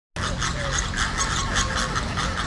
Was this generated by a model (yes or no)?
no